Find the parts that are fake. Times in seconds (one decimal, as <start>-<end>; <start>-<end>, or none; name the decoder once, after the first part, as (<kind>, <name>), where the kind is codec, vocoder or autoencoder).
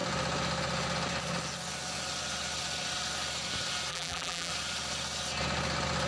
3.9-4.5 (vocoder, BigVGAN v2)